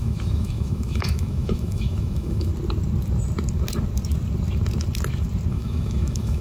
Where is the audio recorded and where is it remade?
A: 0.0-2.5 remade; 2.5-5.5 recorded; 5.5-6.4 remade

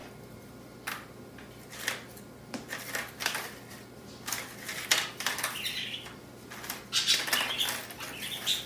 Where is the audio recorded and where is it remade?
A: 0.0-8.7 recorded

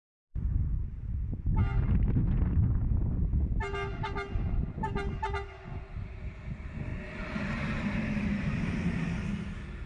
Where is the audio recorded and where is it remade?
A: 0.0-9.9 recorded

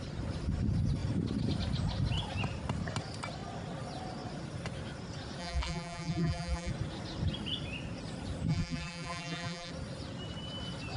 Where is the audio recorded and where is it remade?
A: 0.0-5.4 recorded; 5.4-6.7 remade; 6.7-8.5 recorded; 8.5-9.7 remade; 9.7-11.0 recorded